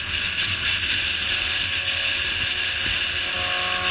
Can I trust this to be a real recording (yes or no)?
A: yes